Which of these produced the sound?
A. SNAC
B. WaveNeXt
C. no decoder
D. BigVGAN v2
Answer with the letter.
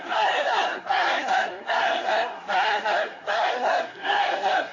A